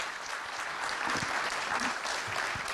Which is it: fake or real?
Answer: real